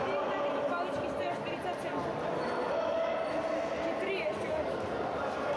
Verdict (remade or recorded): recorded